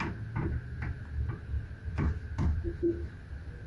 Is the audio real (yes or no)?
yes